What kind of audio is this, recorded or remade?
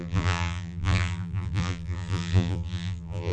remade